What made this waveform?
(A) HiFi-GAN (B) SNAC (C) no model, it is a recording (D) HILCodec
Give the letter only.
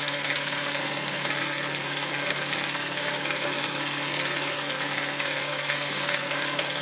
B